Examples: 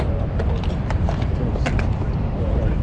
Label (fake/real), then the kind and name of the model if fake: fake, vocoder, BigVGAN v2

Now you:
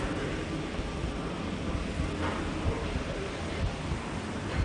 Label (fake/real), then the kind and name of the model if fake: real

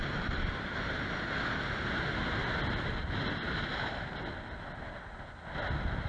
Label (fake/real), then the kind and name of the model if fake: real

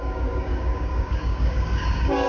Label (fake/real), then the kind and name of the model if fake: fake, codec, DAC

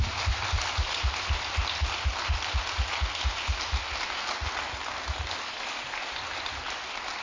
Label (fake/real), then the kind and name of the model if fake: real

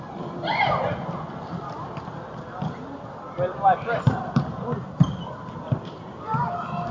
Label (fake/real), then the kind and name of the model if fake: real